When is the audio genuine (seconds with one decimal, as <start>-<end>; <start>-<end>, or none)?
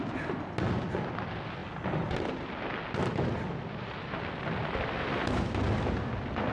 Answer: 0.0-6.5